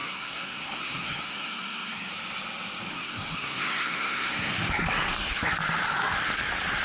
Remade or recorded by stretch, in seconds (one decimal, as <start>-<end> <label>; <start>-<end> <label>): 0.0-2.1 remade; 2.1-2.9 recorded; 2.9-4.5 remade; 4.5-6.8 recorded